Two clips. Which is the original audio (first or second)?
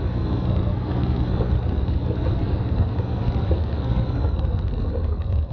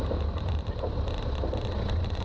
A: second